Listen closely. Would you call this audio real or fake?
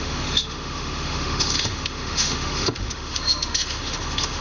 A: fake